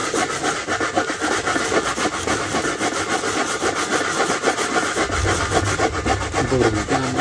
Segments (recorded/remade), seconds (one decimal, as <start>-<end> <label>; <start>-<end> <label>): 0.0-7.2 recorded